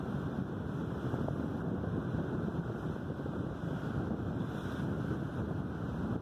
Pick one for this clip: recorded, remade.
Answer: recorded